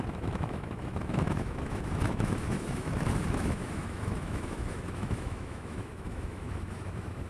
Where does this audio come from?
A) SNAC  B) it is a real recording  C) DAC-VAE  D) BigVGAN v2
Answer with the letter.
C